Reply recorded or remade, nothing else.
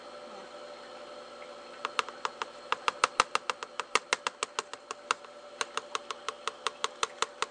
recorded